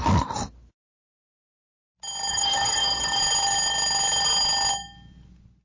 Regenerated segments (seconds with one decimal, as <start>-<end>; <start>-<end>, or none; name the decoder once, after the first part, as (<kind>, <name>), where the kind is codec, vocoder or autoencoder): 2.3-3.2 (codec, DAC)